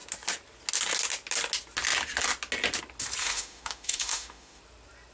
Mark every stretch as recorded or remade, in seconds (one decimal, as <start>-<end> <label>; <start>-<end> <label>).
0.0-3.2 recorded; 3.2-4.6 remade; 4.6-5.1 recorded